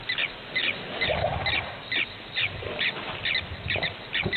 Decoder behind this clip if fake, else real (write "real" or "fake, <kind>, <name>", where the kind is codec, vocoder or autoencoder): real